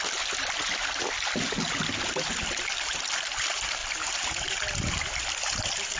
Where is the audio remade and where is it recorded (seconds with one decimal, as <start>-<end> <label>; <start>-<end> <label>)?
0.0-6.0 recorded